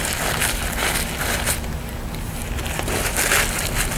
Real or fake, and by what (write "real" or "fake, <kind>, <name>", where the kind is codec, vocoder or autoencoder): real